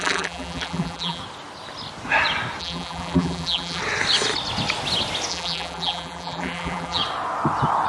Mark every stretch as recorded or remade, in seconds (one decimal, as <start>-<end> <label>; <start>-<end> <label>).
0.0-1.2 remade; 1.2-2.6 recorded; 2.6-3.8 remade; 3.8-5.3 recorded; 5.3-7.0 remade; 7.0-7.9 recorded